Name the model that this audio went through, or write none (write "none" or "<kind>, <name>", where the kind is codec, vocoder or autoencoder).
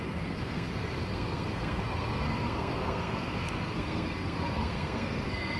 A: codec, SNAC